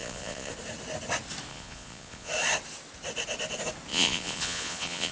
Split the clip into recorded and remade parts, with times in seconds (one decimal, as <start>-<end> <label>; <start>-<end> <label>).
0.0-0.5 remade; 0.5-1.5 recorded; 1.5-2.3 remade; 2.3-3.9 recorded; 3.9-5.1 remade